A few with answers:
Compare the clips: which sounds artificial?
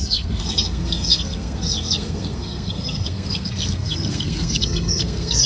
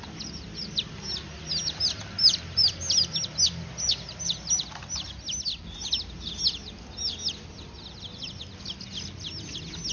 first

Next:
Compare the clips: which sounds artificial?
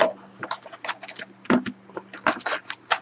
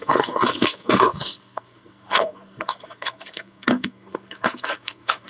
second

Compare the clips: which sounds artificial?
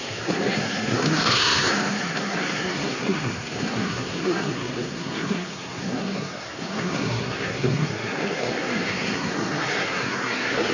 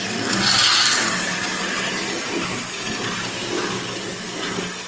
first